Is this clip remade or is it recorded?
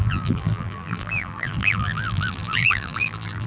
remade